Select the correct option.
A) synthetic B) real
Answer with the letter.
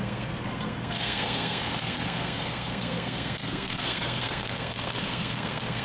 A